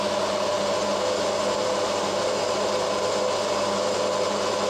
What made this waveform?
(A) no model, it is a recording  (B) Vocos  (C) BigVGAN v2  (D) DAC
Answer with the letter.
A